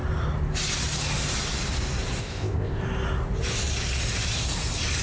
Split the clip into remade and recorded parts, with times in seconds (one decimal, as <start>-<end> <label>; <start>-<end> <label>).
0.0-2.2 recorded; 2.2-2.8 remade; 2.8-5.0 recorded